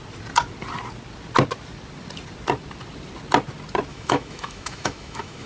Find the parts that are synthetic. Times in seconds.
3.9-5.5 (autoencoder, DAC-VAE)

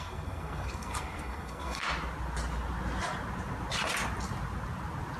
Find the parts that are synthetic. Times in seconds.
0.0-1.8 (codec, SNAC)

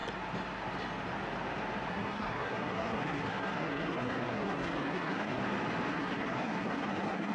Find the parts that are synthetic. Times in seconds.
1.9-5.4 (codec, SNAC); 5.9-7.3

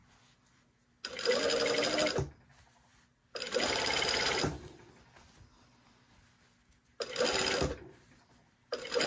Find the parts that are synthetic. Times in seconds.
0.0-1.3 (vocoder, BigVGAN v2); 2.9-4.9; 6.9-9.1

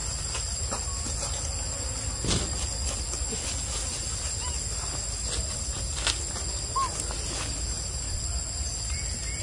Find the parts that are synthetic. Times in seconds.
none